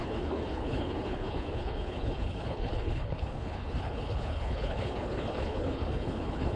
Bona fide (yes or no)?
no